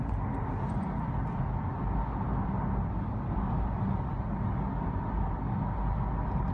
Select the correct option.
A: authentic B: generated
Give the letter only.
A